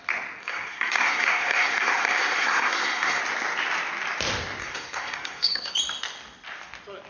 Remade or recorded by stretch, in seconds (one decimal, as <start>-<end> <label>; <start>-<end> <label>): 0.0-0.4 recorded; 0.4-3.2 remade; 3.2-4.6 recorded; 4.6-5.7 remade; 5.7-7.1 recorded